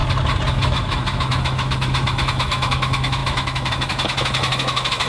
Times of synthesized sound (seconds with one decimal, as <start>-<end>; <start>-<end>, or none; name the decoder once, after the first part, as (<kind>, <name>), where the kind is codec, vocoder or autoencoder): 0.5-5.1 (autoencoder, DAC-VAE)